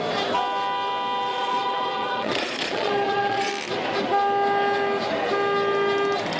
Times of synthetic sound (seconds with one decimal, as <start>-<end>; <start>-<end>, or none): 1.3-3.5